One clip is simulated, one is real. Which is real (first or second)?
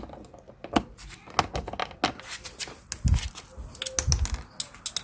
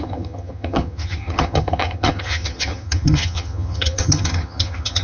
first